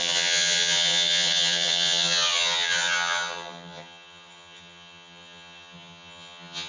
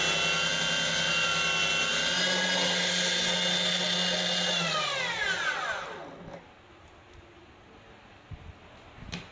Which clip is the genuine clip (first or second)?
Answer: second